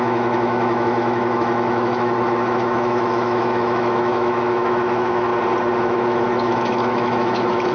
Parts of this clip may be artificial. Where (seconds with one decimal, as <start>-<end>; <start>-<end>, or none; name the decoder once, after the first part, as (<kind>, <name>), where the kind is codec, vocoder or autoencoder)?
0.0-5.3 (autoencoder, DAC-VAE); 5.8-7.7